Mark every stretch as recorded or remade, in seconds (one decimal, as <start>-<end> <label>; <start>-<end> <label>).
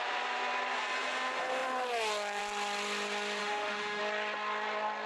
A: 0.0-3.4 recorded; 3.4-4.0 remade; 4.0-5.1 recorded